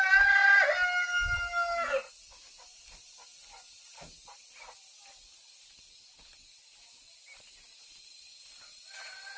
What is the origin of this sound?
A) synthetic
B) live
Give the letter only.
B